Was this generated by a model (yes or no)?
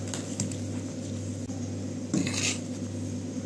no